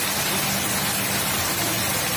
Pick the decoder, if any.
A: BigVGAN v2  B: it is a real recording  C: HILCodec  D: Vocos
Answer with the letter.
B